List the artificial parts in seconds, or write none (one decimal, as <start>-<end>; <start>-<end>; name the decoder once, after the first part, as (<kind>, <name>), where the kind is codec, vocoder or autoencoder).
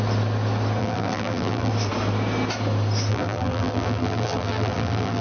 0.8-1.7 (vocoder, BigVGAN v2); 3.1-5.2